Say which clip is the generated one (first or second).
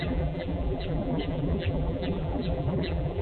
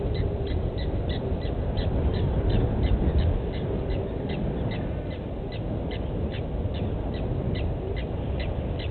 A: first